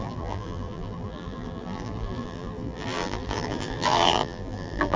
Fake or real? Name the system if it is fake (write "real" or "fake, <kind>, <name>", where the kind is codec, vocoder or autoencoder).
fake, vocoder, BigVGAN v2